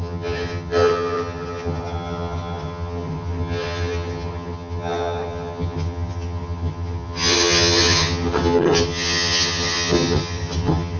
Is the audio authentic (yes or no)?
no